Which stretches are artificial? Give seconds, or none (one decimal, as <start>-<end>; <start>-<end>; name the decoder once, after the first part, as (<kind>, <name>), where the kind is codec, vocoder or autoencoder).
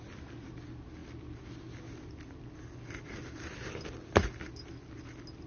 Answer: none